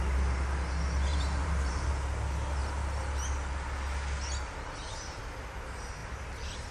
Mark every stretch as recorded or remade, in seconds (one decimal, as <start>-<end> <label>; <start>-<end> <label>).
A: 0.0-1.1 recorded; 1.1-1.9 remade; 1.9-6.7 recorded